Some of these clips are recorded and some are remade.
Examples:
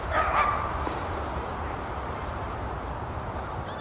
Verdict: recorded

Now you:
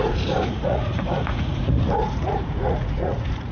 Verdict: remade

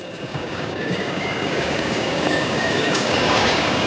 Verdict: remade